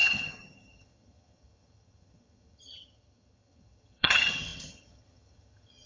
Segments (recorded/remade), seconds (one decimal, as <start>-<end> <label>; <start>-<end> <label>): 0.0-5.9 remade